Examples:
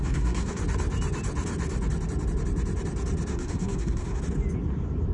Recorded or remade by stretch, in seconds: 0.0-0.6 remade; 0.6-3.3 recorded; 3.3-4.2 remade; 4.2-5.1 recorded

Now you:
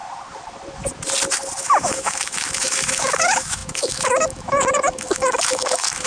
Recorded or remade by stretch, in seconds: 0.0-1.6 recorded; 1.6-6.1 remade

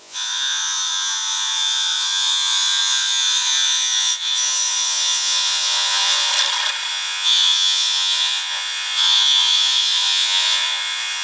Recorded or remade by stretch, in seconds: 0.0-6.3 remade; 6.3-6.9 recorded; 6.9-11.2 remade

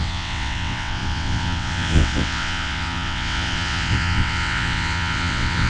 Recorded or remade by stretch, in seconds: 0.0-5.7 remade

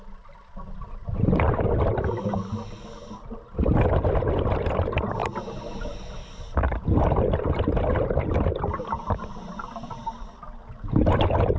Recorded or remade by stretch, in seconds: 0.0-11.6 recorded